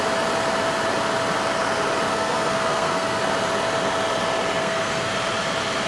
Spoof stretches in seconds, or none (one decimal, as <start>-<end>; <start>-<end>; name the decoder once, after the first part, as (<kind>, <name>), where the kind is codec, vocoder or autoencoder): 2.1-3.2 (codec, SNAC); 4.6-5.1